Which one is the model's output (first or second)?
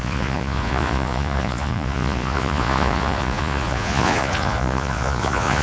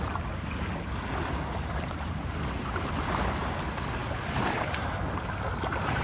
first